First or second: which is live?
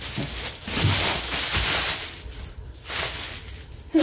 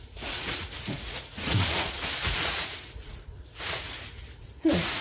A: first